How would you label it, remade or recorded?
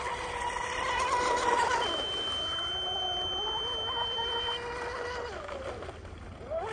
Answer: recorded